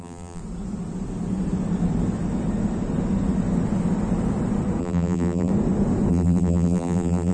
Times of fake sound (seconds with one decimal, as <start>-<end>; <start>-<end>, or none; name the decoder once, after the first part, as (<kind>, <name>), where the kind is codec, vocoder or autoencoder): 0.0-0.4 (vocoder, BigVGAN v2); 4.8-5.5; 6.1-7.3